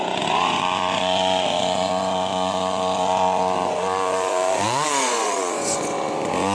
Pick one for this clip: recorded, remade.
remade